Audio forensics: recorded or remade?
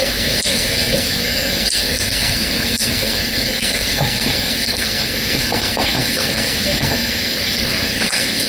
remade